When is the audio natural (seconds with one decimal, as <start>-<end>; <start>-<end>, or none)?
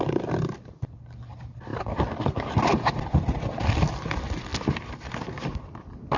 1.7-2.5; 4.5-5.1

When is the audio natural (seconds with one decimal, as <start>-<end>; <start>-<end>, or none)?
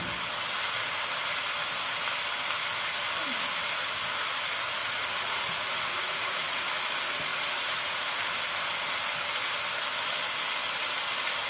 0.0-4.8; 6.7-7.3; 8.2-11.5